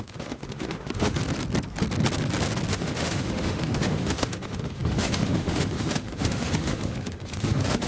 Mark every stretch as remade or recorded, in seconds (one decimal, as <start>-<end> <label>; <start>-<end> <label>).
0.0-1.2 remade; 1.2-2.7 recorded; 2.7-7.9 remade